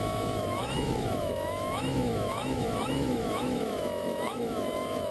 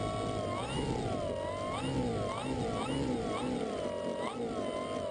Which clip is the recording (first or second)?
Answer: second